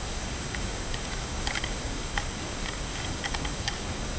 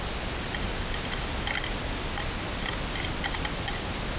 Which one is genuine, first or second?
second